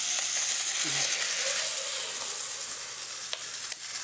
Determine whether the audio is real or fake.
real